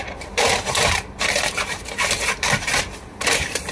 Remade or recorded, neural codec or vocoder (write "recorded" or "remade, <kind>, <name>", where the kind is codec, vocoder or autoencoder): remade, vocoder, BigVGAN v2